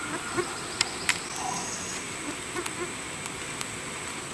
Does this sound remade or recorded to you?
recorded